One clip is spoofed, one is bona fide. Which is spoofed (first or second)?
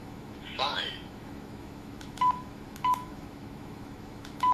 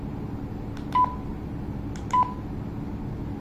first